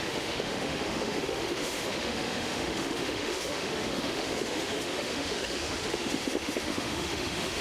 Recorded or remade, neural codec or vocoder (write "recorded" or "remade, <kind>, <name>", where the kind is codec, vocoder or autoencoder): remade, autoencoder, DAC-VAE